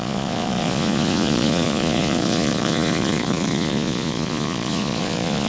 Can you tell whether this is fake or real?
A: fake